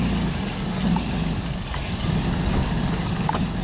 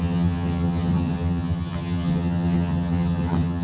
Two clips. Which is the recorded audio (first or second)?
first